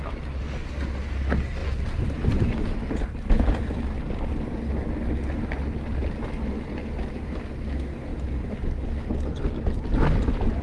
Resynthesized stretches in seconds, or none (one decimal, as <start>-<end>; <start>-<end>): 1.6-2.8; 8.1-8.8